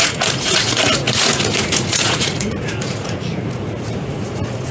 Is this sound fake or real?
fake